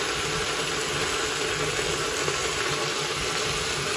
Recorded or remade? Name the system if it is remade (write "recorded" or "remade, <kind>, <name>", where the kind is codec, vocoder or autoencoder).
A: recorded